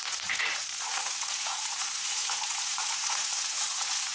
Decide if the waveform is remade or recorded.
remade